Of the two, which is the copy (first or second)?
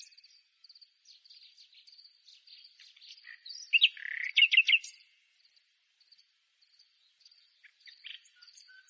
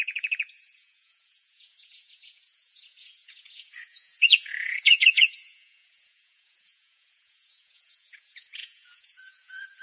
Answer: second